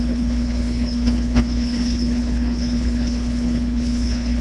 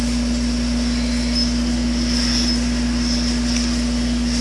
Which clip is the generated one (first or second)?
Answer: first